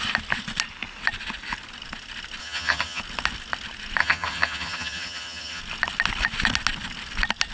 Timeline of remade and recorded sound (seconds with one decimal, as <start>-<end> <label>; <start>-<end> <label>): 0.0-2.4 recorded; 2.4-3.0 remade; 3.0-4.0 recorded; 4.0-5.6 remade; 5.6-7.5 recorded